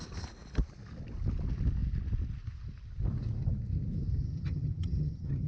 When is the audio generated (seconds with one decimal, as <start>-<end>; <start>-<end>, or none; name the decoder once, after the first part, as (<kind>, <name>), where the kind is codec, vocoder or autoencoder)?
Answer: 4.2-5.5 (vocoder, HiFi-GAN)